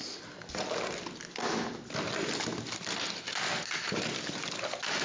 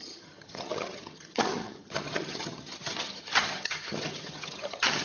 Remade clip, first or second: second